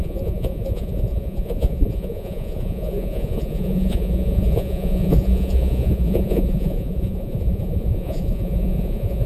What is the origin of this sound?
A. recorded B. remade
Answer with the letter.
B